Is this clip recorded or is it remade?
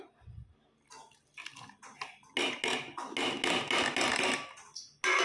recorded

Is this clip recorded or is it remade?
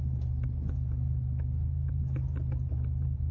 recorded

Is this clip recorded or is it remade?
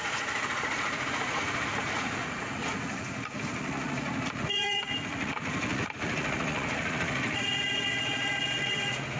remade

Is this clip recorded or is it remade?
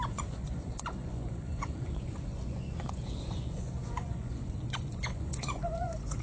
remade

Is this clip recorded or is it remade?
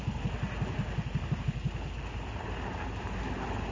recorded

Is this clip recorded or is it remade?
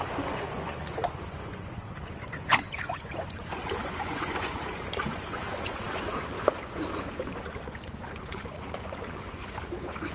remade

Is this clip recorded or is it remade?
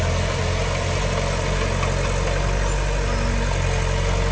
recorded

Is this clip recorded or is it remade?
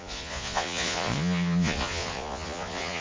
remade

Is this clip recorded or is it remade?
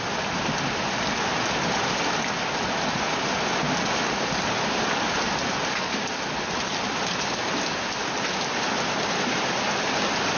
recorded